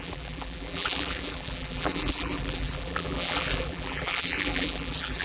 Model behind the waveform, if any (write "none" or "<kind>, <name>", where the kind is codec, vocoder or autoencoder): vocoder, BigVGAN v2